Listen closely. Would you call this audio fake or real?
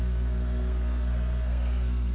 fake